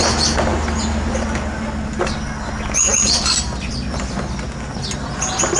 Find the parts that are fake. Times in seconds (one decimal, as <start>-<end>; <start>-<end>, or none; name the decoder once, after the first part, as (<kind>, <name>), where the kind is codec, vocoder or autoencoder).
none